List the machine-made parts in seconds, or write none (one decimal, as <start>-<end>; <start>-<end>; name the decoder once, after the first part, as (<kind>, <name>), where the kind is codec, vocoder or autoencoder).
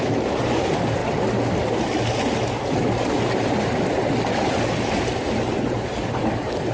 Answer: 0.0-1.0 (vocoder, BigVGAN v2); 5.0-6.7